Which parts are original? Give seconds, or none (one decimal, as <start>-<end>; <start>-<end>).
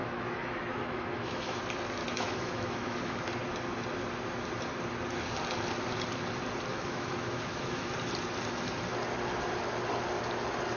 1.6-2.0; 3.2-6.7; 7.9-10.8